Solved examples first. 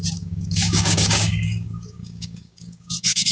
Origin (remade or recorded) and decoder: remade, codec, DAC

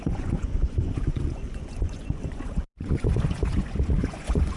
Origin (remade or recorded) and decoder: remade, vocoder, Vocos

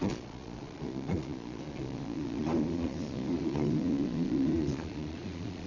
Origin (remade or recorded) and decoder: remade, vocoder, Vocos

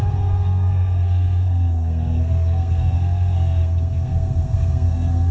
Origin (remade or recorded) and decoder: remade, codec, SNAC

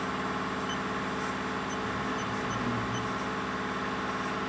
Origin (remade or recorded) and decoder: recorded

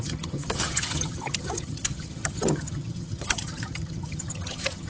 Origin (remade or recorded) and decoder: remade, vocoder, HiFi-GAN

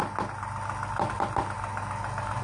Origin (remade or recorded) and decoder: recorded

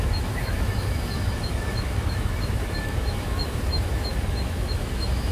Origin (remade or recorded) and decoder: remade, autoencoder, DAC-VAE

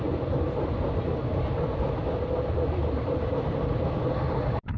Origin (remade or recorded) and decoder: recorded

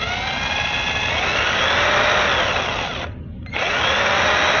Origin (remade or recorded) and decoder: recorded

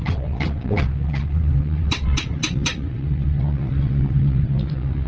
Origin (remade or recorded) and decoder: remade, vocoder, WaveNeXt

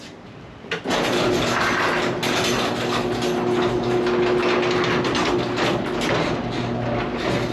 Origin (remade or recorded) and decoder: recorded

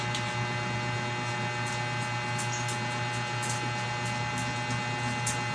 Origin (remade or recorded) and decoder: recorded